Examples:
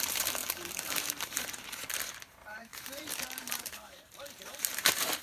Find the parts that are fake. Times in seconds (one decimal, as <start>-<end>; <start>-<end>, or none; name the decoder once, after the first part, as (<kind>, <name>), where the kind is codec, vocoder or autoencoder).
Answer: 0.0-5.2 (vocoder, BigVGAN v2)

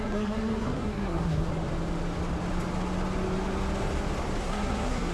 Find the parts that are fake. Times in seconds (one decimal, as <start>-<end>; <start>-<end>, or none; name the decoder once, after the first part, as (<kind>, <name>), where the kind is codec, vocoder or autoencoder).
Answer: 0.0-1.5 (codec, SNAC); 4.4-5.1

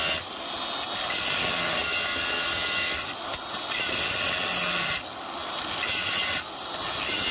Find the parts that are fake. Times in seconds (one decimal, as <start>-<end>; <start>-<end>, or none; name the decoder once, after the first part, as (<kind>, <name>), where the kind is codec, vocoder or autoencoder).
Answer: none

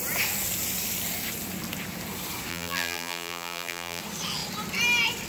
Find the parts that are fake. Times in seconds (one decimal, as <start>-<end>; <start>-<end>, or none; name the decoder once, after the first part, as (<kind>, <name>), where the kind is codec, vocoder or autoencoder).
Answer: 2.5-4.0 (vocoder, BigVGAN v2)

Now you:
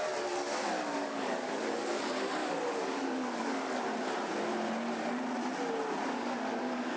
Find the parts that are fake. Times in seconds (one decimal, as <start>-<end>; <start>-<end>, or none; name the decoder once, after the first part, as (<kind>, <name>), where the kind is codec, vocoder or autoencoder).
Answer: 1.0-2.0 (codec, DAC); 2.4-3.8; 6.0-7.0

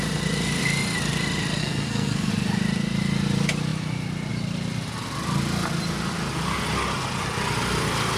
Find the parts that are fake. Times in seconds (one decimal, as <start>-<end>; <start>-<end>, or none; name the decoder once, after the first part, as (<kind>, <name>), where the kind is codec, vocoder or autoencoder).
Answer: 1.6-2.3 (codec, SNAC)